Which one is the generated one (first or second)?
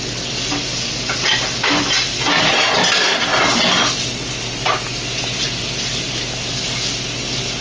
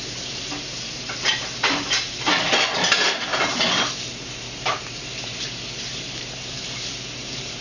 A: second